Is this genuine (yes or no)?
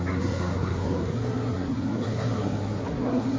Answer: no